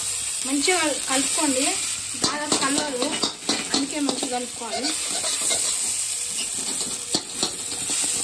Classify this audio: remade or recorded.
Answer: recorded